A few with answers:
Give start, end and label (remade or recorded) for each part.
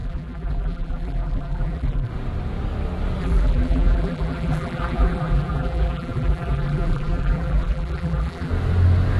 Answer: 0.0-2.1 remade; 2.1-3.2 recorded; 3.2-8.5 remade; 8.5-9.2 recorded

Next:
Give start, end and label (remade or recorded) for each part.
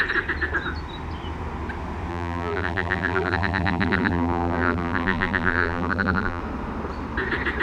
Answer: 0.0-2.1 recorded; 2.1-6.4 remade; 6.4-7.6 recorded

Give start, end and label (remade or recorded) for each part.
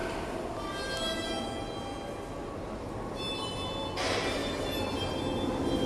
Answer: 0.0-5.9 recorded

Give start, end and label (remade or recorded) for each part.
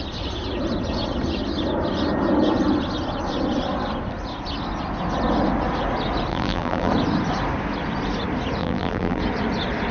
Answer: 0.0-6.3 recorded; 6.3-6.9 remade; 6.9-8.6 recorded; 8.6-9.2 remade; 9.2-9.9 recorded